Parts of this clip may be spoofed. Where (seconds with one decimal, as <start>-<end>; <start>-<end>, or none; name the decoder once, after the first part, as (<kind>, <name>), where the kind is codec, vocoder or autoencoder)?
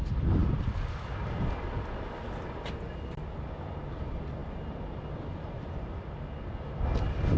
none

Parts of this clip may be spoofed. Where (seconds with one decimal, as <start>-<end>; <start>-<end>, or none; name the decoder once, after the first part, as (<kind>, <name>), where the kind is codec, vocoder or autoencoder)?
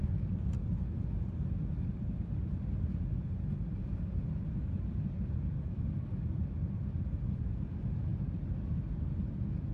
none